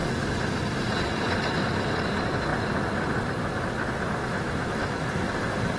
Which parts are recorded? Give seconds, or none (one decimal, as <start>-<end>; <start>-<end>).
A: 0.0-4.2; 5.1-5.8